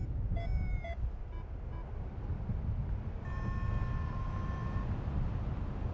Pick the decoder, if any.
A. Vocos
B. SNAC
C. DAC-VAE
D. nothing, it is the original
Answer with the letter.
D